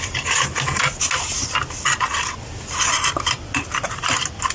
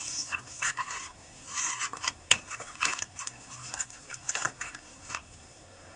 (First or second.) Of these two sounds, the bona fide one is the first